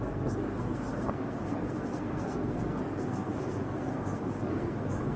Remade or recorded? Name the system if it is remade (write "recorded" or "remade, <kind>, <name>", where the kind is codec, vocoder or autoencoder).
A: remade, codec, SNAC